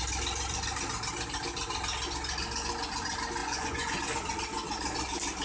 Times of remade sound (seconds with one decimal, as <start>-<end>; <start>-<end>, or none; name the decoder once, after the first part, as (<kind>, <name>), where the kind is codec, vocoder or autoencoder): 3.4-4.0 (vocoder, Vocos)